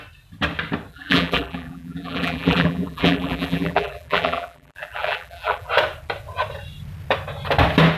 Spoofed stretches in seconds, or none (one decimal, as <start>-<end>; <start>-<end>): 0.9-5.7